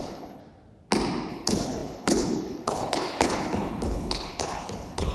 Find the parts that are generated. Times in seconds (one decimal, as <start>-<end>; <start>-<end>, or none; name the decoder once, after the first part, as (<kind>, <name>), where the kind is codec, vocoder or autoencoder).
0.0-0.4 (codec, HILCodec); 1.3-5.1